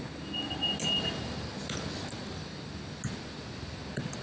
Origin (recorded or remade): recorded